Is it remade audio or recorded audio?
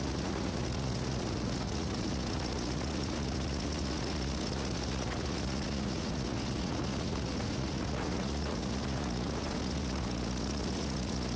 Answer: remade